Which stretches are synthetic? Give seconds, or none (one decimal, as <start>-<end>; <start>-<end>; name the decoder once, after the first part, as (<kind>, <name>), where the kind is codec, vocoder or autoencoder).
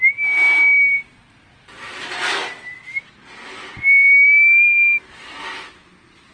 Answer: none